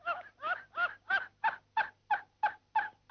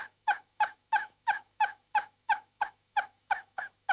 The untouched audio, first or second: first